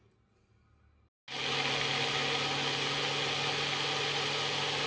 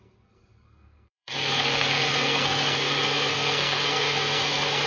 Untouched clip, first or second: first